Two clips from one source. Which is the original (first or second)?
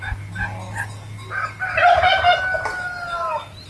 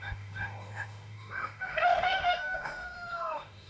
first